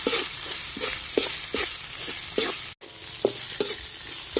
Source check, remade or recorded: recorded